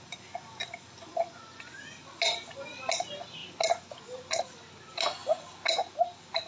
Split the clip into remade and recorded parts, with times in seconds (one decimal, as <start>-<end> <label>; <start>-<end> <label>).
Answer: 0.0-1.1 recorded; 1.1-1.8 remade; 1.8-6.5 recorded